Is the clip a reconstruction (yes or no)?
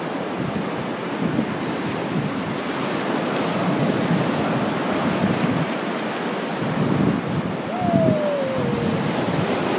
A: no